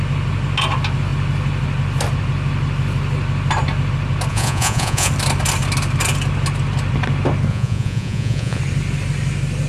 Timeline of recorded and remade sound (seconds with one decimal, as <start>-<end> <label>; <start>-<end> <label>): 0.0-4.3 recorded; 4.3-5.1 remade; 5.1-7.5 recorded; 7.5-8.6 remade; 8.6-9.7 recorded